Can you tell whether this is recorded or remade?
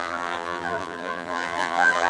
remade